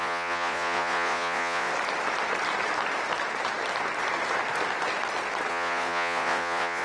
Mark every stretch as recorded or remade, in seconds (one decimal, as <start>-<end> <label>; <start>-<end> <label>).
0.0-1.7 remade; 1.7-5.5 recorded; 5.5-6.8 remade